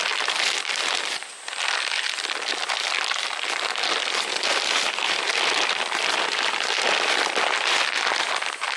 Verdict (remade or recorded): recorded